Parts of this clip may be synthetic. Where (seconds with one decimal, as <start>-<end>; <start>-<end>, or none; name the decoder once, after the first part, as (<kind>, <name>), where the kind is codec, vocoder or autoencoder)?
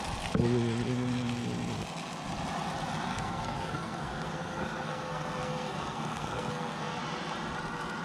3.1-7.0 (codec, SNAC)